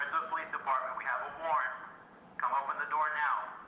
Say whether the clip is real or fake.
real